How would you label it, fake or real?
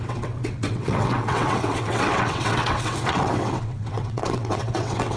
fake